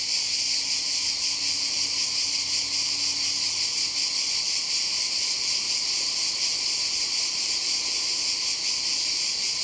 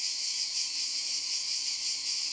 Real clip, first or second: first